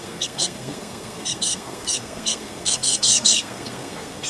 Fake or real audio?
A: fake